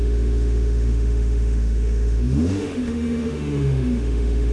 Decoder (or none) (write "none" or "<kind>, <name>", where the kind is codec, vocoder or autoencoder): autoencoder, DAC-VAE